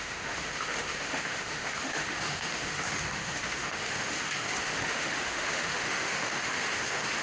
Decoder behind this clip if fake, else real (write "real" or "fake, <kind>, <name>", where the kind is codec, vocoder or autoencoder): fake, autoencoder, DAC-VAE